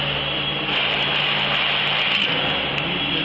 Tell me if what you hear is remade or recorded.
recorded